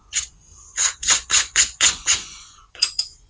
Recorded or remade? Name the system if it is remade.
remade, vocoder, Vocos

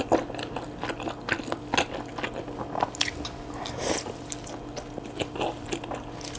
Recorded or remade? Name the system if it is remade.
recorded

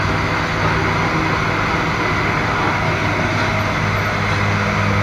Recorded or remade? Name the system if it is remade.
recorded